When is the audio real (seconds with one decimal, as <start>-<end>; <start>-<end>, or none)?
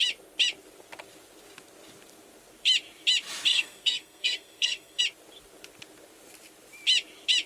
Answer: 0.0-3.5; 5.0-7.5